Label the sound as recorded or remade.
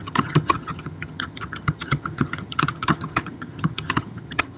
remade